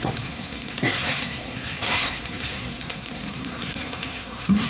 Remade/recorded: remade